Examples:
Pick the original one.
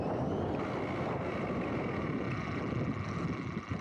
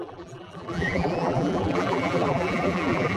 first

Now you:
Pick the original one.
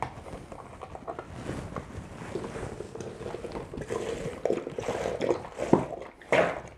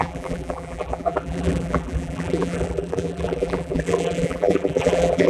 first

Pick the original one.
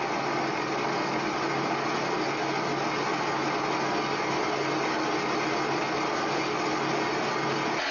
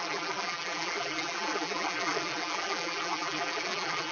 first